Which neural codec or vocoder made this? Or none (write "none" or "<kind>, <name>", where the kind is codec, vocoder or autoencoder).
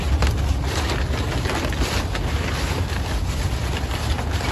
none